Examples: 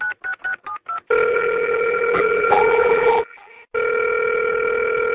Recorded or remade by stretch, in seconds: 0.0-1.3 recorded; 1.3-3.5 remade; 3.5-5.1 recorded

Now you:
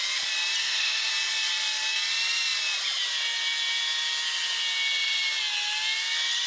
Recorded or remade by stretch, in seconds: 0.0-0.6 recorded; 0.6-1.1 remade; 1.1-6.5 recorded

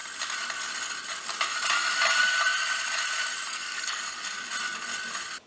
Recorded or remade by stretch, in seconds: 0.0-3.5 recorded; 3.5-4.0 remade; 4.0-5.5 recorded

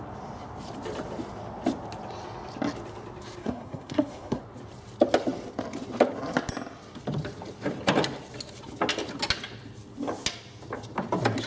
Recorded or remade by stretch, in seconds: 0.0-3.4 recorded; 3.4-4.4 remade; 4.4-11.5 recorded

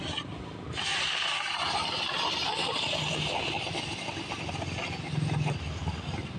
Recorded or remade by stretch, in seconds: 0.0-6.4 recorded

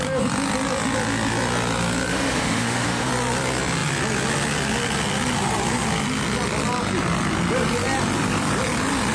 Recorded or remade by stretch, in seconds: 0.0-2.1 recorded; 2.1-3.1 remade; 3.1-9.1 recorded

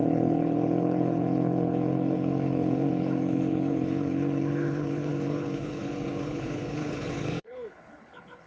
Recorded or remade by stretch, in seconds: 0.0-8.5 remade